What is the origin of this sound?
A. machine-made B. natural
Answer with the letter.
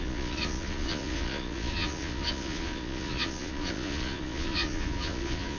A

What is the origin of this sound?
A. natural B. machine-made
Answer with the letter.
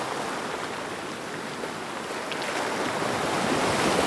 A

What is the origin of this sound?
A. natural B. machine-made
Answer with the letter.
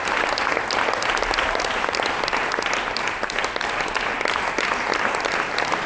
A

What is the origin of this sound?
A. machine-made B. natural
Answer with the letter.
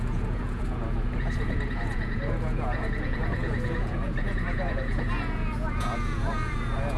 A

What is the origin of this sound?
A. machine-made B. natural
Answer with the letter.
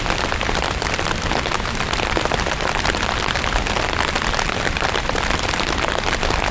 B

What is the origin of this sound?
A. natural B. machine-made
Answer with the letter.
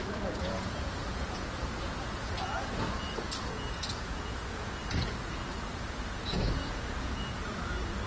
B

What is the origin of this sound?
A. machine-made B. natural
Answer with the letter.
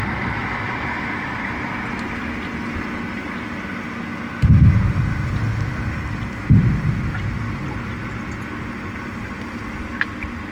B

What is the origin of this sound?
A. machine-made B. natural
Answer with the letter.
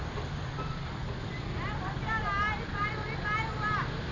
B